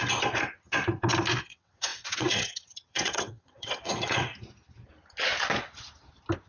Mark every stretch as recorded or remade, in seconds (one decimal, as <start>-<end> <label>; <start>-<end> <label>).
0.0-1.4 recorded; 1.4-4.3 remade; 4.3-6.5 recorded

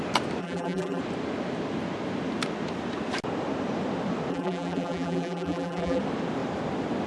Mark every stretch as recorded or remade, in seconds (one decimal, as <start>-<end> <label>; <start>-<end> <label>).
0.0-0.4 recorded; 0.4-1.0 remade; 1.0-4.3 recorded; 4.3-6.0 remade; 6.0-7.1 recorded

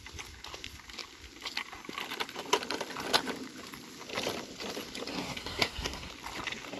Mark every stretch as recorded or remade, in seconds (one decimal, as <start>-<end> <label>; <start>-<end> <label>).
0.0-5.1 recorded; 5.1-6.1 remade; 6.1-6.8 recorded

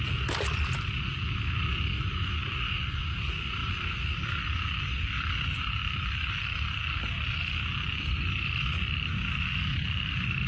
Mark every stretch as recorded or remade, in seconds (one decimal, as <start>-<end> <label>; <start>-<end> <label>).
0.0-3.6 recorded; 3.6-5.3 remade; 5.3-5.8 recorded; 5.8-6.8 remade; 6.8-10.5 recorded

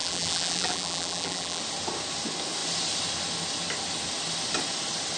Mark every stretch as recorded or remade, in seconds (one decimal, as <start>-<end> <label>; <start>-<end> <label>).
0.0-1.6 remade; 1.6-5.2 recorded

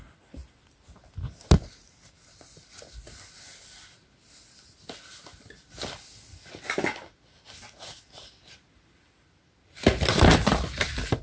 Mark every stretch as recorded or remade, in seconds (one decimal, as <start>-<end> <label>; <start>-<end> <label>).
0.0-11.2 recorded